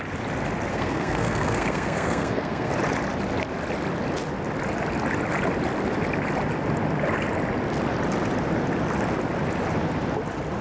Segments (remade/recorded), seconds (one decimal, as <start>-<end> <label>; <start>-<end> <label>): 0.0-0.7 recorded; 0.7-2.7 remade; 2.7-10.6 recorded